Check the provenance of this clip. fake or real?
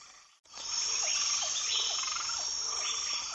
real